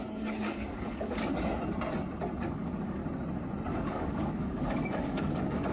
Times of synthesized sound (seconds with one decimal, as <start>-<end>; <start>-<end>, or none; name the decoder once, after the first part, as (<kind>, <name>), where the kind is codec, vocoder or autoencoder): 0.0-1.3 (codec, DAC); 2.5-3.0; 3.7-5.7

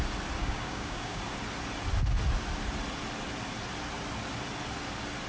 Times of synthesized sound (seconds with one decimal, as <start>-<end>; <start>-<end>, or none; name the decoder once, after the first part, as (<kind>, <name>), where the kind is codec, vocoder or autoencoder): 0.4-1.2 (codec, DAC)

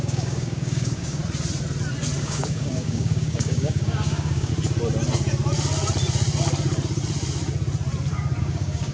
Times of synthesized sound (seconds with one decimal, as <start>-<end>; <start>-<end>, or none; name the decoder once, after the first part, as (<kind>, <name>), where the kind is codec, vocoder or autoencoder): 0.0-1.2 (codec, DAC); 2.2-4.5; 8.4-8.9

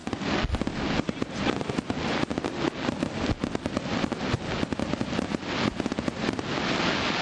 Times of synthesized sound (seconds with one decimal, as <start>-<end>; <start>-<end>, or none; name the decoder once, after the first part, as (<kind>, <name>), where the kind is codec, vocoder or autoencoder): none

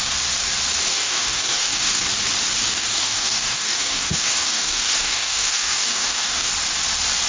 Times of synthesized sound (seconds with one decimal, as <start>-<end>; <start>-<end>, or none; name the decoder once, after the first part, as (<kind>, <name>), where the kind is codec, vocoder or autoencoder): 0.9-2.0 (codec, DAC); 2.7-6.5